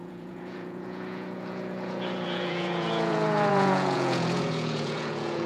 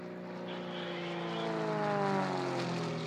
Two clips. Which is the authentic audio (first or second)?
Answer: second